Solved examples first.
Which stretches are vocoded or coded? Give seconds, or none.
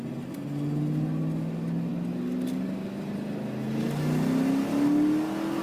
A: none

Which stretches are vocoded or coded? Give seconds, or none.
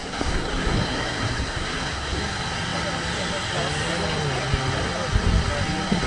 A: 0.0-2.2 (codec, SNAC)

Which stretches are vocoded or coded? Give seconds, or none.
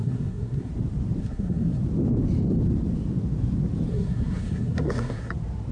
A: 0.0-0.7 (codec, SNAC); 1.2-1.8; 3.9-5.3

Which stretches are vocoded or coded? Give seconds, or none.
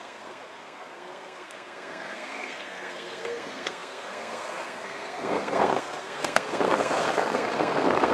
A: 0.0-8.1 (codec, SNAC)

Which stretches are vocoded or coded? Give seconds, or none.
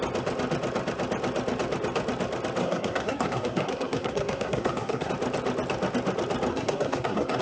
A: 2.6-5.1 (codec, SNAC); 6.5-7.4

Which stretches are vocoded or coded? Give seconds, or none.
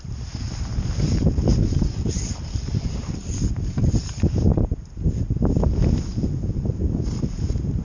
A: none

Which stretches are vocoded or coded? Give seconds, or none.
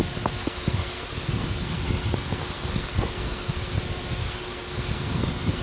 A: 0.4-3.8 (codec, SNAC); 4.2-5.6